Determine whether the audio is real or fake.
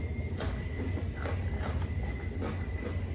real